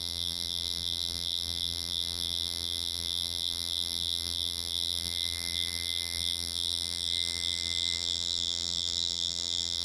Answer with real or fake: fake